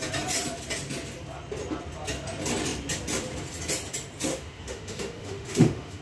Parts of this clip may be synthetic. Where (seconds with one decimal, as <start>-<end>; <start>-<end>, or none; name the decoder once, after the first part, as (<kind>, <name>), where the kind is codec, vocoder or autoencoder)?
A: 4.3-6.0 (autoencoder, DAC-VAE)